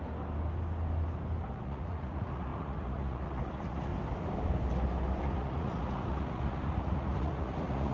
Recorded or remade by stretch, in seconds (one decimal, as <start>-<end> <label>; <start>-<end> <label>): 0.0-1.5 recorded; 1.5-3.9 remade; 3.9-5.2 recorded; 5.2-7.9 remade